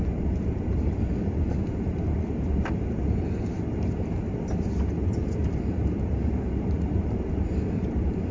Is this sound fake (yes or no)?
yes